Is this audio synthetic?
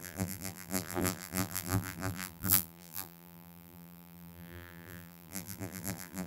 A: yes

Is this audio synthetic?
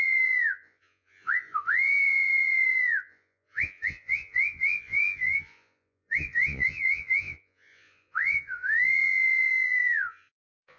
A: yes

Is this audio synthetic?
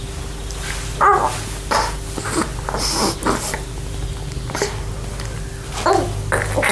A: no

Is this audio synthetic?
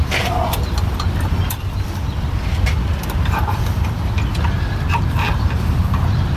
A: yes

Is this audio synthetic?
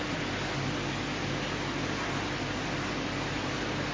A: no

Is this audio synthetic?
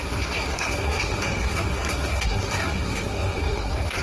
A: yes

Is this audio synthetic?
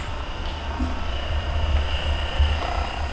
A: no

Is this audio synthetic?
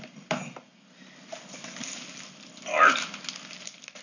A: no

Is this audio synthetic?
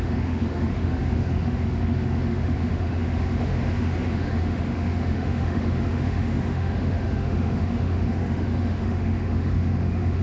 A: yes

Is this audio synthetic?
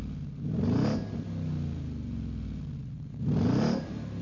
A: no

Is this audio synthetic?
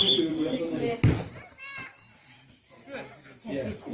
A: no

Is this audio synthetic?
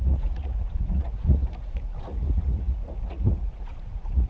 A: yes